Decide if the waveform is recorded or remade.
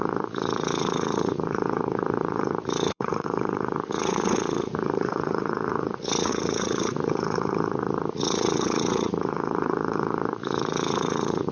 remade